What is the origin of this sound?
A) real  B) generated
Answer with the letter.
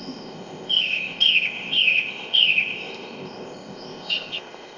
B